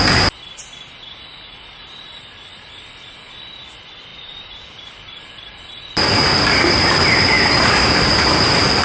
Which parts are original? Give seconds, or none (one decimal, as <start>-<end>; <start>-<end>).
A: 0.0-4.1; 8.2-8.8